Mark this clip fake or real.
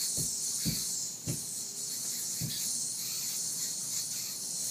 real